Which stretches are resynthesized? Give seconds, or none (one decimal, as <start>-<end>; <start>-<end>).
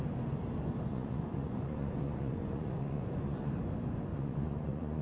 0.9-3.5; 4.1-5.0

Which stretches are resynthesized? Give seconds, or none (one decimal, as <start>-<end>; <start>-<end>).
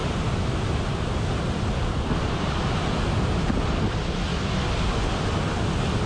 0.0-4.3; 5.0-6.1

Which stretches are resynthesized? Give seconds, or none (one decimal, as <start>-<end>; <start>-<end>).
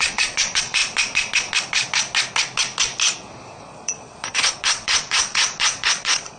0.0-0.8; 3.6-6.4